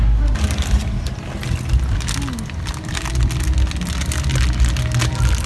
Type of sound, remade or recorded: recorded